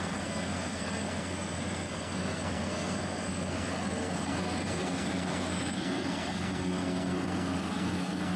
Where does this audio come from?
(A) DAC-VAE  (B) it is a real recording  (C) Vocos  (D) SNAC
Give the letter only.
D